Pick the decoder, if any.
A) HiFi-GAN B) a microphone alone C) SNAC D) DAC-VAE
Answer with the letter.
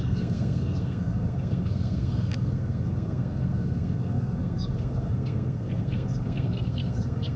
C